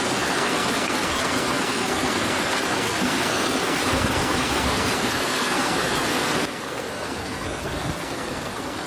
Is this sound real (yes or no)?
no